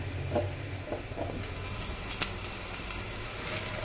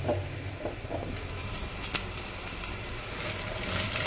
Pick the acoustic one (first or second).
first